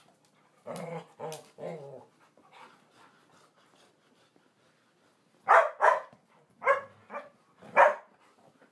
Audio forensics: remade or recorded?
recorded